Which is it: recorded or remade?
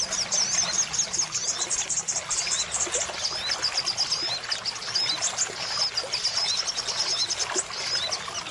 recorded